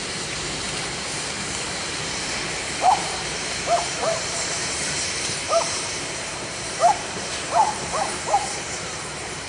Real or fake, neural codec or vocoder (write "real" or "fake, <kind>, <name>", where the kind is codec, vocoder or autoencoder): fake, vocoder, BigVGAN v2